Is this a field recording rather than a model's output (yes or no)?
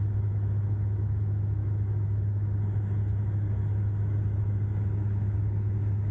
no